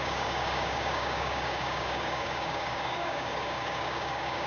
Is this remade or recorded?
remade